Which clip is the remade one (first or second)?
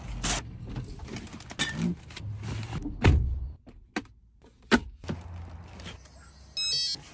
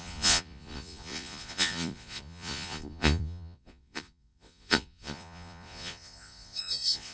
second